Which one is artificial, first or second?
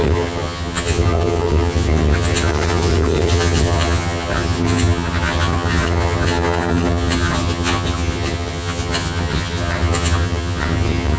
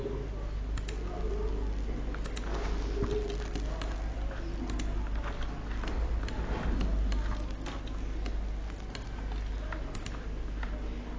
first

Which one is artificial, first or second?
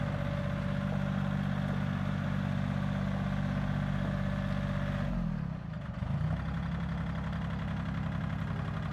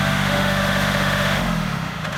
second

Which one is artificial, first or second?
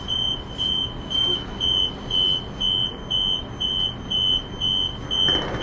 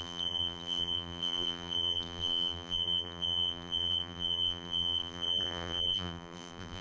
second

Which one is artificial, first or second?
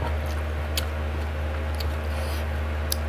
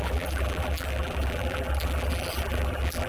second